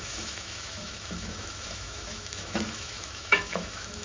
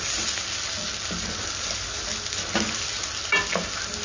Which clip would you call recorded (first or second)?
second